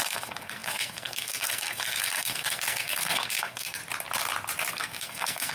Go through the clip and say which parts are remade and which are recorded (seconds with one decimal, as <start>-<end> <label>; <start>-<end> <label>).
0.0-3.8 remade; 3.8-4.7 recorded; 4.7-5.5 remade